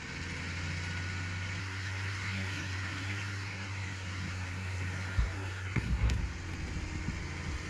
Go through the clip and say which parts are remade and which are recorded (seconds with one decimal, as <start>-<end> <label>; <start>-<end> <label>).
0.0-1.6 recorded; 1.6-6.2 remade; 6.2-7.7 recorded